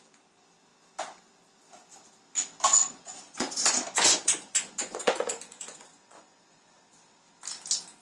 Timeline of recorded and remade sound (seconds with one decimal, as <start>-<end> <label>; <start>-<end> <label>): 0.0-2.7 recorded; 2.7-6.8 remade; 6.8-8.0 recorded